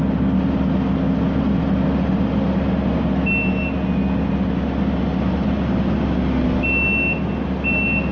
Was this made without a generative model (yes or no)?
yes